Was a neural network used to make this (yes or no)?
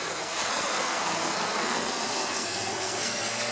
yes